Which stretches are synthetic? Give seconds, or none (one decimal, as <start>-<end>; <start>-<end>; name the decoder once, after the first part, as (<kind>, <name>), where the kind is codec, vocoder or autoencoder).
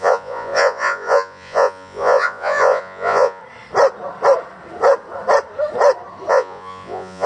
0.0-3.4 (vocoder, Vocos); 6.3-7.3